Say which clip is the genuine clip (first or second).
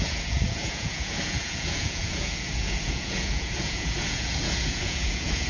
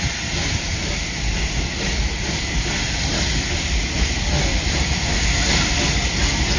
second